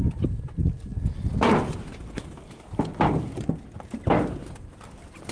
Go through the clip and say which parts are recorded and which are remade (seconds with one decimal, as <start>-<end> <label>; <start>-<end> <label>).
0.0-5.3 recorded